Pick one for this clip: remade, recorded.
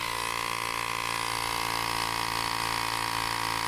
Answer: recorded